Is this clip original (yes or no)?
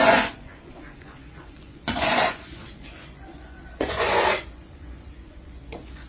no